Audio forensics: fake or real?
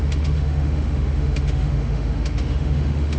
fake